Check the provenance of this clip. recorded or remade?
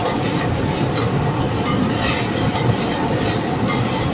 recorded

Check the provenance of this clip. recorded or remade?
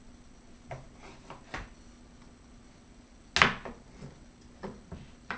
recorded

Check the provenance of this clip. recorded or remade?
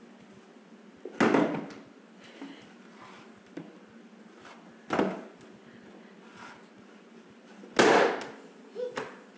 recorded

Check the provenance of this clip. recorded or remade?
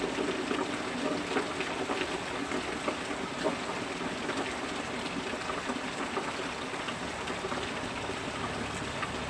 recorded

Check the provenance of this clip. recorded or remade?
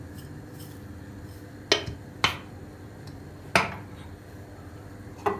recorded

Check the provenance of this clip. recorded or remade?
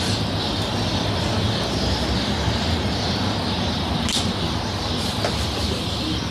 recorded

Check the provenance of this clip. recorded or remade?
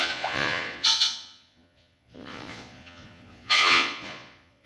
remade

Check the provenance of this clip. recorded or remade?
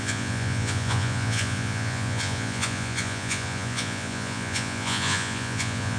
remade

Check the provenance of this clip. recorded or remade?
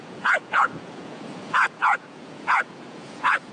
remade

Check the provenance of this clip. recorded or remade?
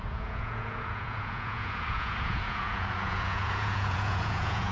remade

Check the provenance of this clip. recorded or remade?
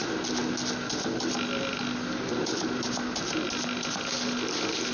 recorded